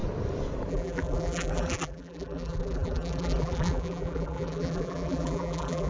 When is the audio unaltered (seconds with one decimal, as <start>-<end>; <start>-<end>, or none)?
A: 0.0-0.7